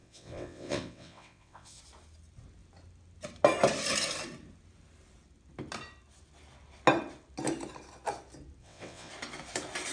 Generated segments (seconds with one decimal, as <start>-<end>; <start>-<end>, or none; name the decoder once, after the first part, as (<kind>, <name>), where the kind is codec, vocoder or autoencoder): 0.0-1.8 (vocoder, WaveNeXt); 8.6-9.1